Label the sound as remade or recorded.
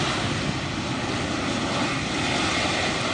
recorded